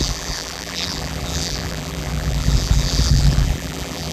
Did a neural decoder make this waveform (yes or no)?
yes